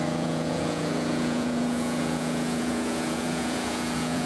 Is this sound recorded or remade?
remade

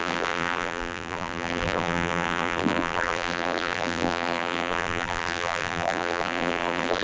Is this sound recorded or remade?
remade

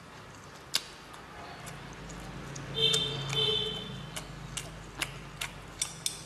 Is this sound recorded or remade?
recorded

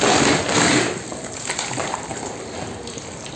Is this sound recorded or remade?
recorded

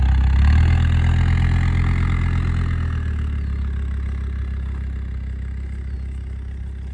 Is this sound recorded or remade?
recorded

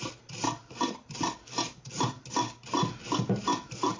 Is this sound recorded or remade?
recorded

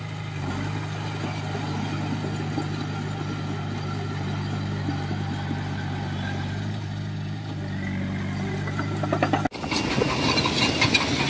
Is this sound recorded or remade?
recorded